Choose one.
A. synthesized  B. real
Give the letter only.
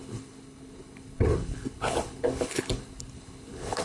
A